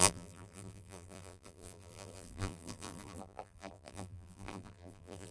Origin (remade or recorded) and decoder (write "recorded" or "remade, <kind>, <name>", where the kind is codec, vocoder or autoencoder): remade, vocoder, BigVGAN v2